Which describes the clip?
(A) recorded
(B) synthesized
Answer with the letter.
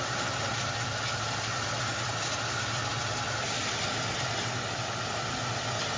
A